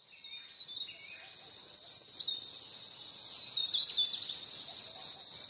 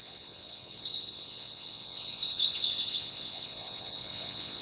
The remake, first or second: second